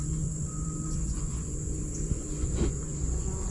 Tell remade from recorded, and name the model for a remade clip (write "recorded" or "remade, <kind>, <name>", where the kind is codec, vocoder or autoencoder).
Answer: remade, vocoder, Vocos